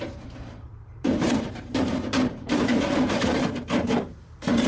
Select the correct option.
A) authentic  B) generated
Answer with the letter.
B